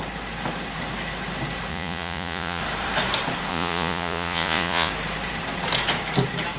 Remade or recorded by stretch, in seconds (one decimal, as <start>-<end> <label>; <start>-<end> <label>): 0.0-1.7 recorded; 1.7-2.6 remade; 2.6-3.5 recorded; 3.5-4.9 remade; 4.9-6.6 recorded